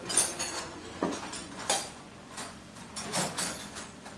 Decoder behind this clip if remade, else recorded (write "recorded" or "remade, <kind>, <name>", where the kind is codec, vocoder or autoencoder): remade, vocoder, Vocos